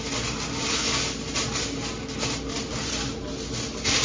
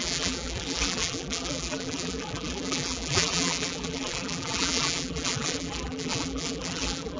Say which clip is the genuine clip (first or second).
first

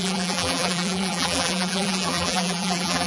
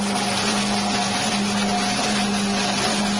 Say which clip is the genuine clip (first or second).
second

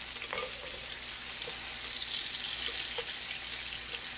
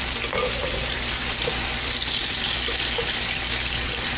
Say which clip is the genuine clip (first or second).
first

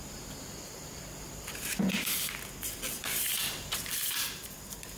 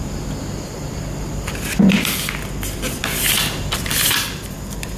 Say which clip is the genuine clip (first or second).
second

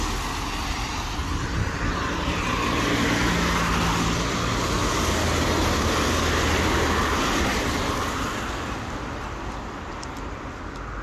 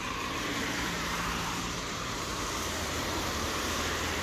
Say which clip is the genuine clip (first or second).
first